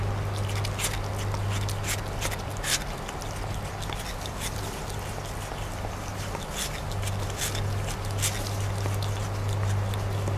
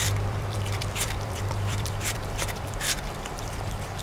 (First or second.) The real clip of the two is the first